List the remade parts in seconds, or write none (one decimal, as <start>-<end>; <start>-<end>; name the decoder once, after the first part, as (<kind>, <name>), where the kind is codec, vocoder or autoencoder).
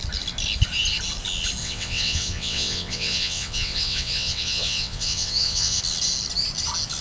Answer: 1.6-5.8 (vocoder, WaveNeXt)